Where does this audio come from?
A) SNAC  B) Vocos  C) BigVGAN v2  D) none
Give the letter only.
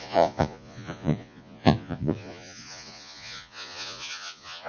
B